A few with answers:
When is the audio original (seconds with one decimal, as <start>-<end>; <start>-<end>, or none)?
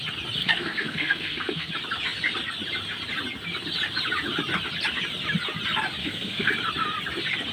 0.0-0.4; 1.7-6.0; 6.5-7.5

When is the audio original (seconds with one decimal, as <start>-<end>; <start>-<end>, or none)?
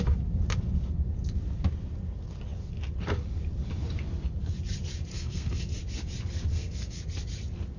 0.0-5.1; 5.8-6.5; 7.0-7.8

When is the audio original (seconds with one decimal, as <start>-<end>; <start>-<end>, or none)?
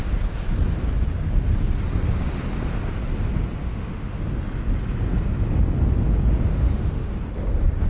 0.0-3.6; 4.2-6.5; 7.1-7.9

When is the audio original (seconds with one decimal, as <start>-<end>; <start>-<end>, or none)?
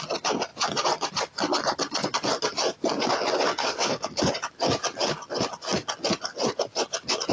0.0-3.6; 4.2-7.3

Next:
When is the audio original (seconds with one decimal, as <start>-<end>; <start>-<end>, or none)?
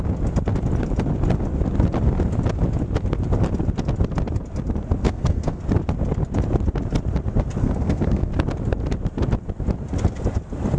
0.0-5.0; 5.6-7.6; 8.3-10.8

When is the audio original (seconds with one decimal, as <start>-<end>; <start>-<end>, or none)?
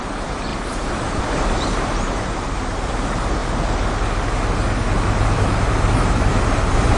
3.4-5.0